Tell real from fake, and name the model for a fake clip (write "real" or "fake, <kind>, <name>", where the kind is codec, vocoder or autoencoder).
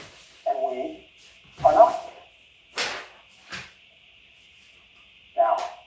real